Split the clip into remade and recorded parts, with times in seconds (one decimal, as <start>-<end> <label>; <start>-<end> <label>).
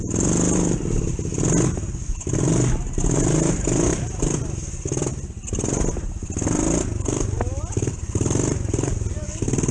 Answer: 0.0-9.7 recorded